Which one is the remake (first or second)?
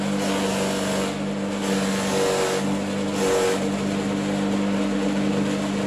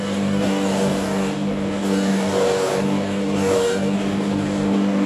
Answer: second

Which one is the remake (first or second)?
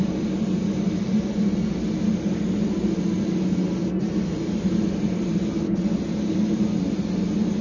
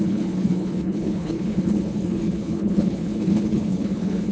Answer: second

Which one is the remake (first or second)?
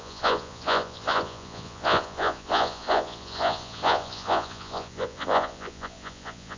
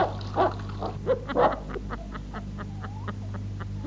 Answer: first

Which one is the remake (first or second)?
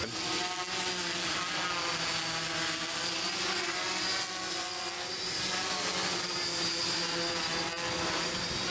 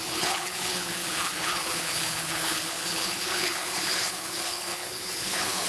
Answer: second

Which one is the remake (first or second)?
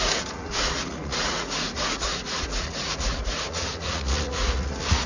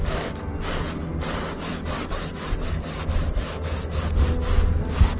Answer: first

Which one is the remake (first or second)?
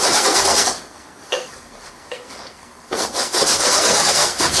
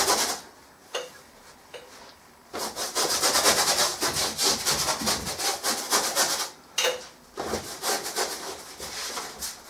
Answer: first